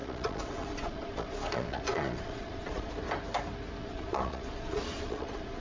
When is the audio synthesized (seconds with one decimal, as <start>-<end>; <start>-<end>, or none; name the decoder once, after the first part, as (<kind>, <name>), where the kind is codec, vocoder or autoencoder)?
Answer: 0.0-2.9 (vocoder, Vocos); 3.8-5.6